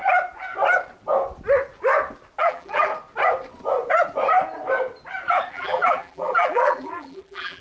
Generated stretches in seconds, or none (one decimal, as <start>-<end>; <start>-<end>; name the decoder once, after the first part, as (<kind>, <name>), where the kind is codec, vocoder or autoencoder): 2.4-2.9 (vocoder, BigVGAN v2); 5.5-7.6